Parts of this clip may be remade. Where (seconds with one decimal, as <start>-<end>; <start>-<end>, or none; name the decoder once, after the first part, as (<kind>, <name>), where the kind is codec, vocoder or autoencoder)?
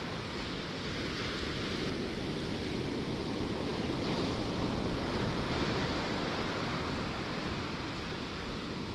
none